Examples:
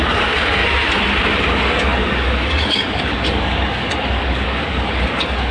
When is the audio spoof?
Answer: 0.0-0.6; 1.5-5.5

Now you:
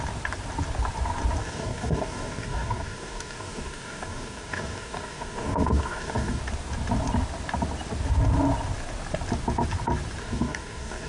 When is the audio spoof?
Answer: 1.4-6.4; 10.2-11.1

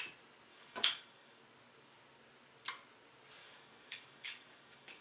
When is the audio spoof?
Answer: 0.5-1.4; 3.4-5.0

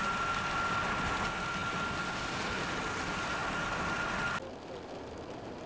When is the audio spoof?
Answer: none

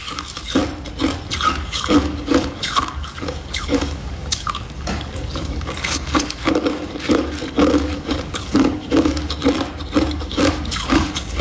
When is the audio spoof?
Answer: 0.0-0.6; 1.5-9.4; 10.1-11.4

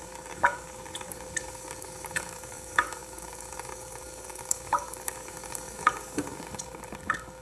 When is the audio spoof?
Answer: 0.0-7.4